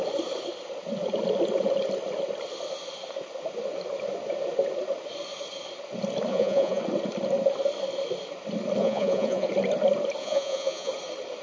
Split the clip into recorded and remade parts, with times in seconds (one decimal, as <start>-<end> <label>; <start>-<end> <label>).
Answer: 0.0-6.3 recorded; 6.3-6.8 remade; 6.8-8.8 recorded; 8.8-9.5 remade; 9.5-10.2 recorded; 10.2-10.9 remade; 10.9-11.4 recorded